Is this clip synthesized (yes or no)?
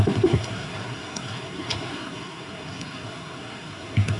yes